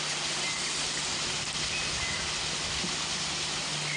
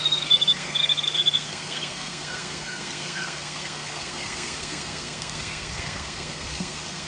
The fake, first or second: second